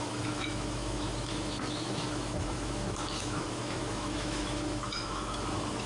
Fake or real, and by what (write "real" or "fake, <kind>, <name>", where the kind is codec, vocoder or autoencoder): fake, autoencoder, DAC-VAE